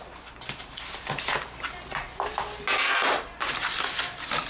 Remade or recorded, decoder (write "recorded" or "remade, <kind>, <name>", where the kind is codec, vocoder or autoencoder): recorded